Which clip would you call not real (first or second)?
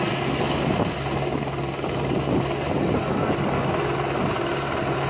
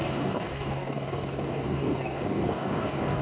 second